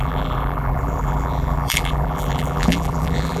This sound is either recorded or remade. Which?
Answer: remade